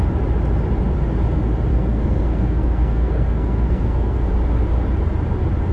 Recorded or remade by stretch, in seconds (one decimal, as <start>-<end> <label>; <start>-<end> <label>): 0.0-1.7 recorded; 1.7-4.3 remade; 4.3-5.7 recorded